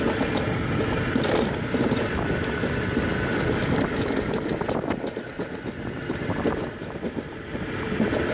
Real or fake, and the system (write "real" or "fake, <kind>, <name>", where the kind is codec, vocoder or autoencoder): real